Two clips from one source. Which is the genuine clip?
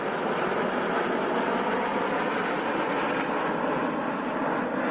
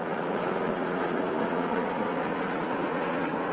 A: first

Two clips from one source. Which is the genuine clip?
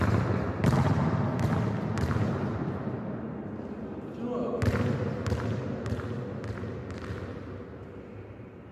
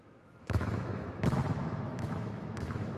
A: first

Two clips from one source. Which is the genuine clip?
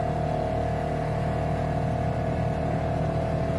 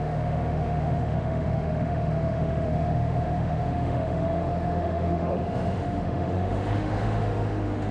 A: first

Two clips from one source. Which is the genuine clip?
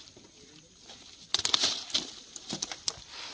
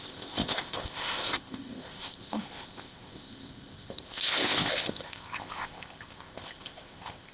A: first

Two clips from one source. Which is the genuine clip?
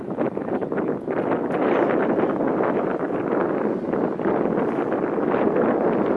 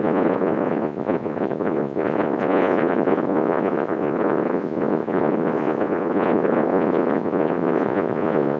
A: first